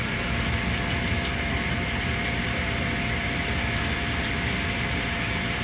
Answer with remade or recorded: remade